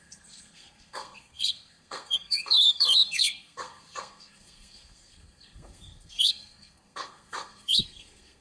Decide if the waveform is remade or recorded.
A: remade